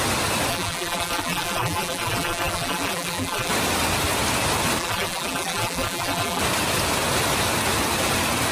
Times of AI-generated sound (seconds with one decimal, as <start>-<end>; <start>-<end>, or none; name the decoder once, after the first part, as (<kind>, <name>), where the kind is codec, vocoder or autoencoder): 0.5-3.5 (vocoder, BigVGAN v2); 4.8-6.4